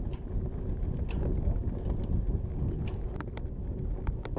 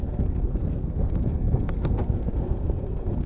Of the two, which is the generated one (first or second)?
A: second